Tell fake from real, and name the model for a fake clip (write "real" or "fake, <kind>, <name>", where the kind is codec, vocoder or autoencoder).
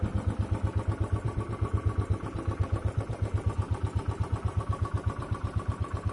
fake, vocoder, BigVGAN v2